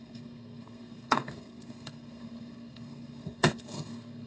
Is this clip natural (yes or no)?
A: no